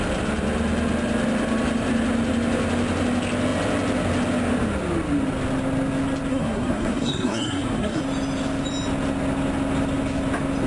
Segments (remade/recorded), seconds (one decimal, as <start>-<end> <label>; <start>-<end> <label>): 0.0-6.3 recorded; 6.3-8.0 remade; 8.0-10.7 recorded